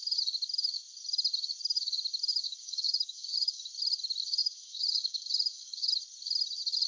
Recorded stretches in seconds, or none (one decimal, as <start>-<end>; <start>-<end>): 0.0-2.3; 3.6-4.4; 5.9-6.9